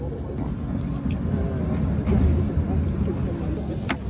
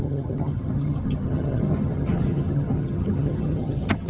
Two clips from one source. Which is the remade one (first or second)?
second